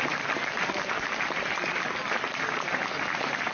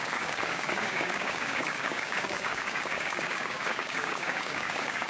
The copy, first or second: second